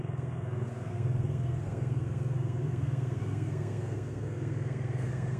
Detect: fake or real fake